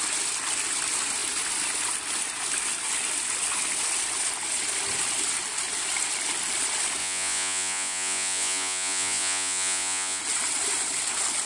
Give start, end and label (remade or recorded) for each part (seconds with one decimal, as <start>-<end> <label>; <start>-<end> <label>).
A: 0.0-7.0 recorded; 7.0-10.2 remade; 10.2-11.5 recorded